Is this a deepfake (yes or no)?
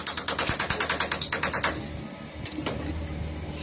no